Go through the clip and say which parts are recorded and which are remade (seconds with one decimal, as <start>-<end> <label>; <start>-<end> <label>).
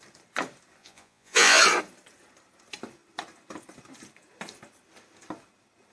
0.0-0.8 recorded; 0.8-1.6 remade; 1.6-5.9 recorded